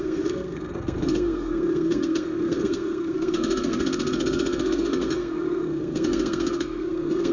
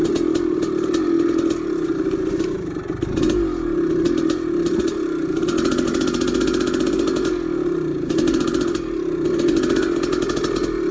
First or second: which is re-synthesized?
first